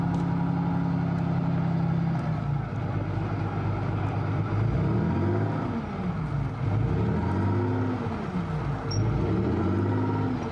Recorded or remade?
recorded